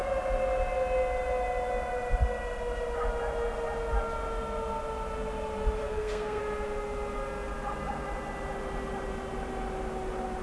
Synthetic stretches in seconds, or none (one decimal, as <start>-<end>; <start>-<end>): 5.8-6.4